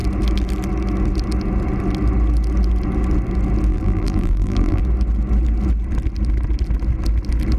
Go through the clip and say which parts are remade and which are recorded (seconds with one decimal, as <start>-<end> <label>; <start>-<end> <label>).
0.0-3.7 recorded; 3.7-4.8 remade; 4.8-7.6 recorded